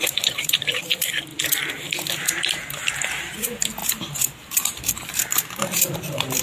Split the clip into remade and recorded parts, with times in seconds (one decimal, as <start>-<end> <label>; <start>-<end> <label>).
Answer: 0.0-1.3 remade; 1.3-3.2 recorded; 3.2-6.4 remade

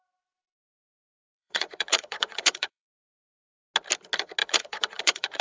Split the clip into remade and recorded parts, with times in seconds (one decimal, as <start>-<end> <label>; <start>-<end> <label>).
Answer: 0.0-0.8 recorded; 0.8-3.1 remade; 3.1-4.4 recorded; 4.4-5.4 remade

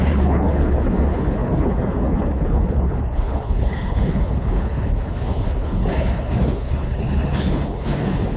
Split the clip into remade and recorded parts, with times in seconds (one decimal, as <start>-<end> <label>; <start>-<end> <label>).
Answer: 0.0-8.4 remade

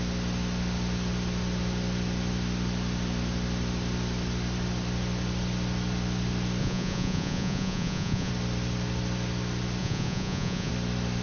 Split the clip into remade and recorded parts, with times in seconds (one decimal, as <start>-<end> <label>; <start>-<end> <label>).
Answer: 0.0-6.6 recorded; 6.6-8.3 remade; 8.3-9.8 recorded; 9.8-10.7 remade; 10.7-11.2 recorded

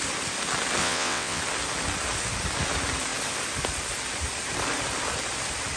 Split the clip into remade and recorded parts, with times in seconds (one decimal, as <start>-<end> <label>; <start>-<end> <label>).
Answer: 0.0-0.8 recorded; 0.8-1.4 remade; 1.4-5.8 recorded

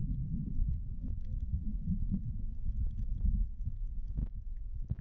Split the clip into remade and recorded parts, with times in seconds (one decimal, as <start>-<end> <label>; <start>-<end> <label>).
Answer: 0.0-1.0 remade; 1.0-5.0 recorded

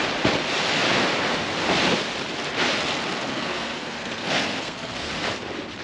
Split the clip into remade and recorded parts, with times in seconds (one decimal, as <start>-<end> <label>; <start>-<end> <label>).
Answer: 0.0-3.3 recorded; 3.3-5.1 remade; 5.1-5.8 recorded